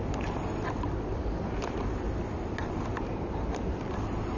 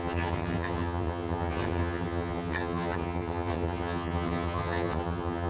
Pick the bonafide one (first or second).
first